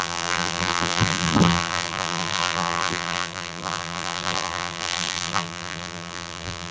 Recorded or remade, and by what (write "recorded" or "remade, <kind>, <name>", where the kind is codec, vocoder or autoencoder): remade, vocoder, BigVGAN v2